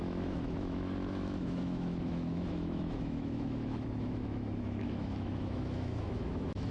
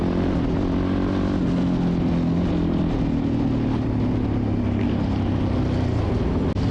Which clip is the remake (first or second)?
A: first